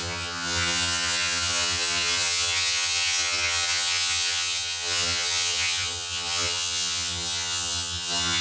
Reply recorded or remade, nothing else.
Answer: remade